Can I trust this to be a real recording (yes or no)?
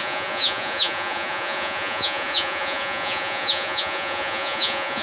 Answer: no